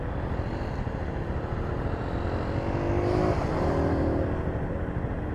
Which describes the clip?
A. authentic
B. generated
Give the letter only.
A